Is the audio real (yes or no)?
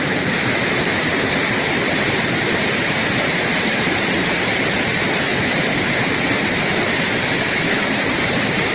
no